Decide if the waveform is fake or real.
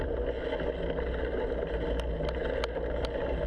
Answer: real